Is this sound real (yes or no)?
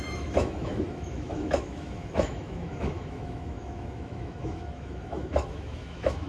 no